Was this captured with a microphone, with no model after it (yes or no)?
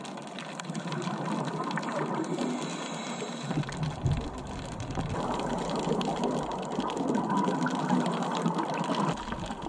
yes